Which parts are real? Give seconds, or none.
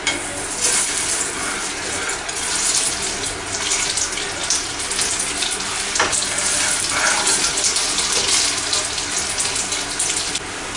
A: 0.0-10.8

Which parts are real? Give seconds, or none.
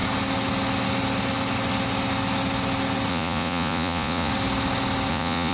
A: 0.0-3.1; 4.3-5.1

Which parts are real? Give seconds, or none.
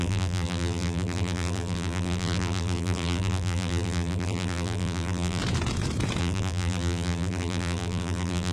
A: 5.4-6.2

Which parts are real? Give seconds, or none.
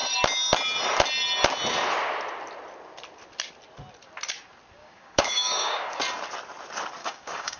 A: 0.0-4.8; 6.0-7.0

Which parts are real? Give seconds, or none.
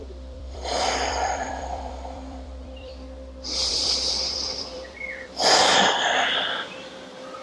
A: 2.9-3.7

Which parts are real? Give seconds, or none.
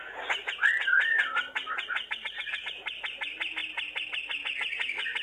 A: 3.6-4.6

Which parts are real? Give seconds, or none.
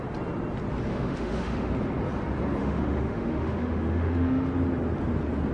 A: 0.0-0.9; 1.7-2.6; 4.5-5.5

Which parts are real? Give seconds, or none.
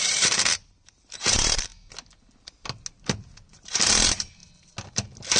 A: 1.7-3.5; 4.4-5.4